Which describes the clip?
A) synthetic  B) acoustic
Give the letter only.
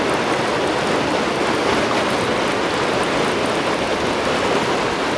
B